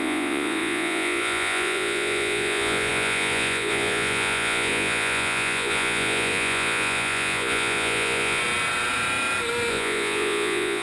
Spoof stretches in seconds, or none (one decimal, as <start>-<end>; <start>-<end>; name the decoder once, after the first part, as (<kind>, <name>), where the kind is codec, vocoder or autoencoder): 0.0-8.4 (vocoder, Vocos); 9.7-10.8